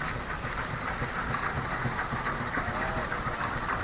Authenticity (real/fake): real